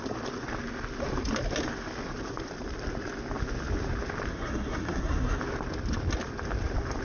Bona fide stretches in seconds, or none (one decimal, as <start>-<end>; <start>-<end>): 0.0-4.3; 5.4-7.0